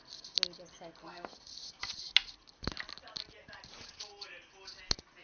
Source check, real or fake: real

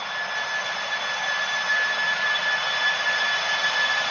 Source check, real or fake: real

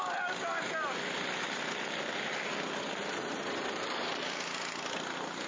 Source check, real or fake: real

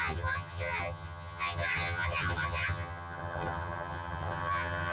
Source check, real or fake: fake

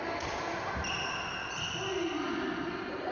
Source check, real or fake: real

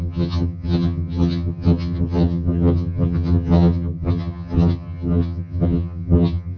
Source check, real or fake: fake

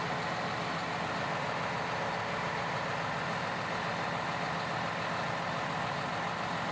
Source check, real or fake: real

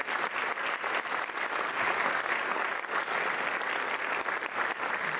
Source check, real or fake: real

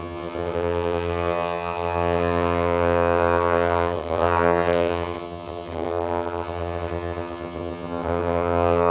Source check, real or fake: fake